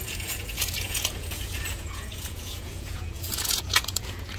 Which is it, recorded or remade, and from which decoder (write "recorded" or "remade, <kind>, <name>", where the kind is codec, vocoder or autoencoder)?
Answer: remade, vocoder, Vocos